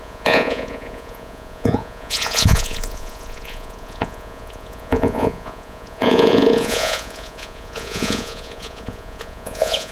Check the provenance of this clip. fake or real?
fake